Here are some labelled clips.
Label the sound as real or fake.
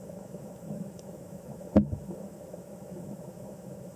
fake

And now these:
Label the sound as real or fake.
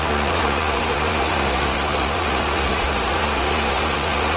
fake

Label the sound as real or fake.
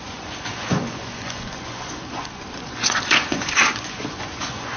fake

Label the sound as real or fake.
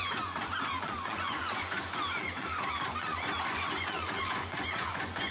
fake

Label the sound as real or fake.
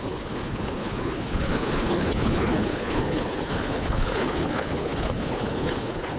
fake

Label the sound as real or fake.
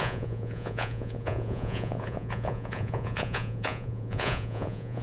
fake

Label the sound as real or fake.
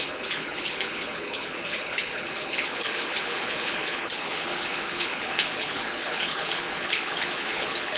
fake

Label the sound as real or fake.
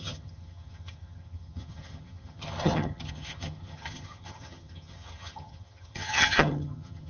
fake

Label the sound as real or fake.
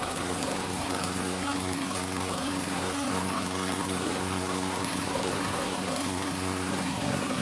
fake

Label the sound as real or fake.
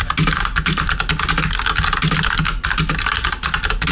real